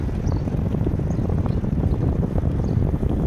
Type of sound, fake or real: real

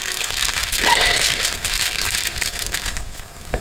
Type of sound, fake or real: fake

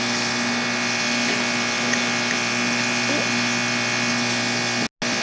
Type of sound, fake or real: real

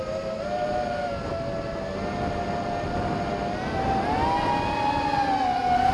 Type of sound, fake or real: real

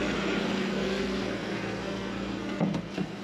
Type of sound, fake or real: fake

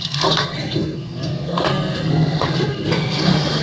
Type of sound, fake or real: fake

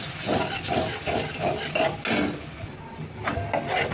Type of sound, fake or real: real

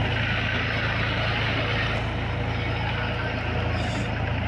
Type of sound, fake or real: real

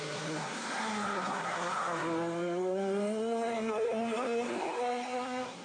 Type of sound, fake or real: fake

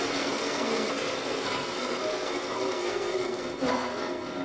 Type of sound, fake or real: fake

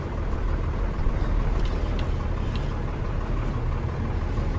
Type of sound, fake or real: real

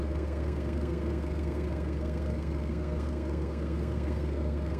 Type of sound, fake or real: fake